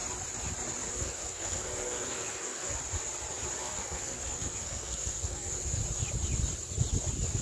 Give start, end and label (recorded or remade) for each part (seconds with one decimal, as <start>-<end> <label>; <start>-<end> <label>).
0.0-0.9 recorded; 0.9-2.8 remade; 2.8-3.6 recorded; 3.6-5.8 remade; 5.8-7.4 recorded